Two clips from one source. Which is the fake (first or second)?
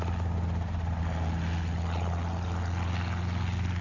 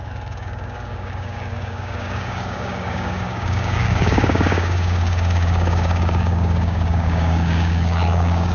second